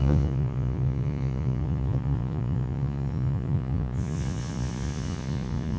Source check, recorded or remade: remade